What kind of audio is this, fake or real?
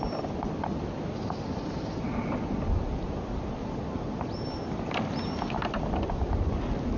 real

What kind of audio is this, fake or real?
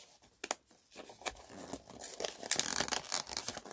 real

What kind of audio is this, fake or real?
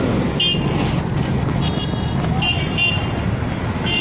real